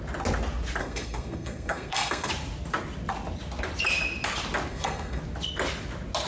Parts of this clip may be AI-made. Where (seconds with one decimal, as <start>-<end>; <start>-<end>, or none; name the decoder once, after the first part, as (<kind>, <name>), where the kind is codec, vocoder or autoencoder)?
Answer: 0.8-2.3 (codec, SNAC); 4.7-5.2